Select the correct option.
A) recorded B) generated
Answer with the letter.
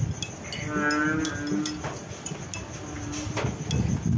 A